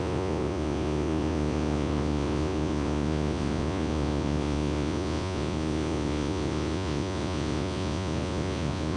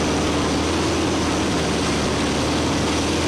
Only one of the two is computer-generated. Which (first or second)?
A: first